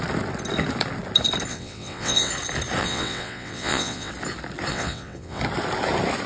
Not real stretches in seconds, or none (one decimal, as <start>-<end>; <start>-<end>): 1.5-2.3; 2.8-4.1; 4.7-5.4